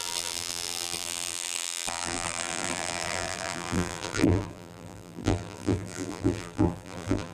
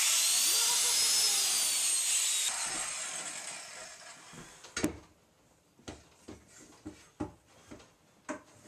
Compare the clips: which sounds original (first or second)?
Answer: second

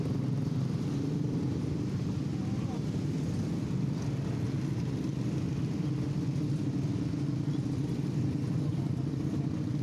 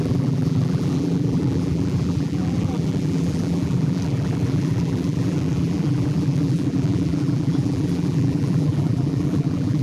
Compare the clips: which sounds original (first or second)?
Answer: first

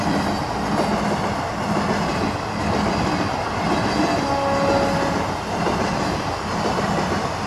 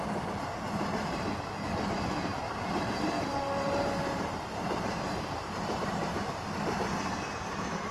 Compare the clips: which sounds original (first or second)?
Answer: first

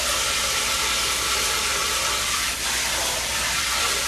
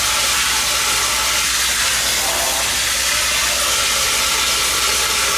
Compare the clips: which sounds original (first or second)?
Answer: second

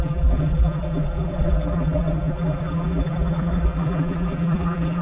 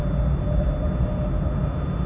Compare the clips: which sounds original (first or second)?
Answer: second